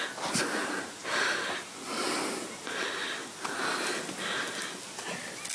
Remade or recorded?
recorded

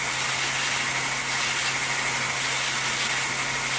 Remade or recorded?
recorded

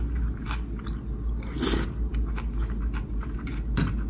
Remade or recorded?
recorded